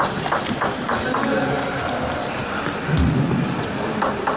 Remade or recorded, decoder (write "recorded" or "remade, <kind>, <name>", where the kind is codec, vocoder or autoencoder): recorded